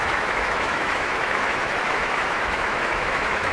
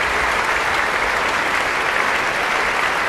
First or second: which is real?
second